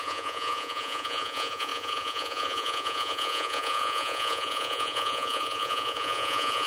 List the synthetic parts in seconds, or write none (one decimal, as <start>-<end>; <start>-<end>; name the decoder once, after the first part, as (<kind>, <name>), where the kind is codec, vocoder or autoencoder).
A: 0.0-6.7 (vocoder, Vocos)